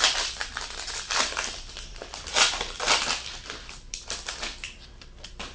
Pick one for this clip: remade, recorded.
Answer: remade